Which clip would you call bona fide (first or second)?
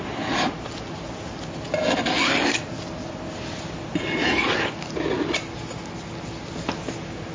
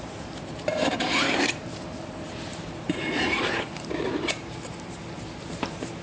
first